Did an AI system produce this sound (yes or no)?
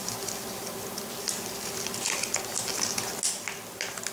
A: no